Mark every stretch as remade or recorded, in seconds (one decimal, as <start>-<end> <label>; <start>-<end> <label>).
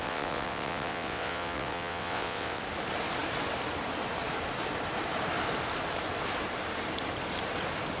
0.0-2.6 remade; 2.6-8.0 recorded